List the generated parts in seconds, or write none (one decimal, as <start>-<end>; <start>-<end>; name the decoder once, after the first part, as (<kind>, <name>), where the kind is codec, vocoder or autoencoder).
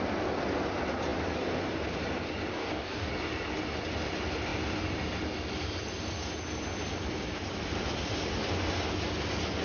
2.5-3.1 (codec, DAC)